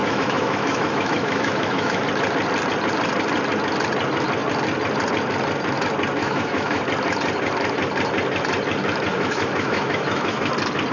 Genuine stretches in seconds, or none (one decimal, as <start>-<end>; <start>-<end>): 2.0-6.2; 6.8-9.1; 10.5-10.9